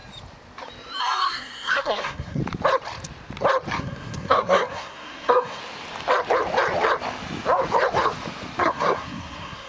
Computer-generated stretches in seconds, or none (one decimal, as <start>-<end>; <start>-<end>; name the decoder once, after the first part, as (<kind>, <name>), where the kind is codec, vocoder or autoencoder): 1.0-2.4 (codec, SNAC); 3.8-5.6; 8.6-9.7